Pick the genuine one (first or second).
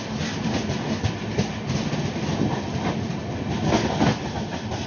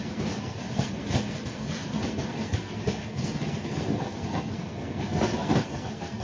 first